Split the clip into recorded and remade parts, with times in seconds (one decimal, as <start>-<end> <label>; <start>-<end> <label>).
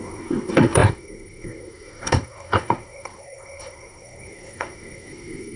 0.0-5.6 remade